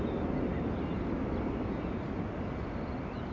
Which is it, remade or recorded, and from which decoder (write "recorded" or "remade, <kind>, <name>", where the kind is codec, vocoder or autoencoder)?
recorded